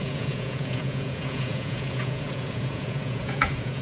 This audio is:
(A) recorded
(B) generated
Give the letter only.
B